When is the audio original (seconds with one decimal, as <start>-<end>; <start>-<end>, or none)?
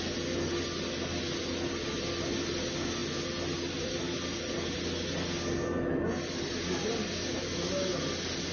0.0-8.5